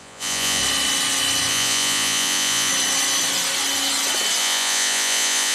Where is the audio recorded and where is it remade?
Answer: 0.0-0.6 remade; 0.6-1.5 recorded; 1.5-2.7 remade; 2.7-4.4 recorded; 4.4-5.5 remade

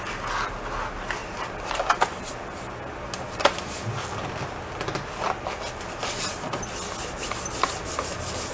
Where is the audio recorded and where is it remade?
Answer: 0.0-8.5 recorded

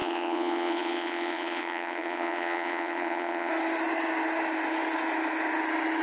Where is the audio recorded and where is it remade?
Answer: 0.0-3.5 remade; 3.5-6.0 recorded

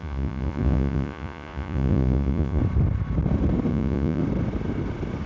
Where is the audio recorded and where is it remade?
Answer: 0.0-2.6 remade; 2.6-3.7 recorded; 3.7-4.2 remade; 4.2-5.3 recorded